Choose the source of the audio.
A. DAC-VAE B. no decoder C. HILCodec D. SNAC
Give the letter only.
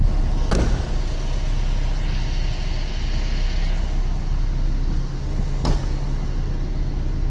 B